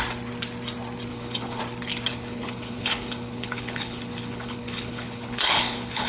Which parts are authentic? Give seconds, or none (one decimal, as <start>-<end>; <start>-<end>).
0.0-1.1; 1.6-2.1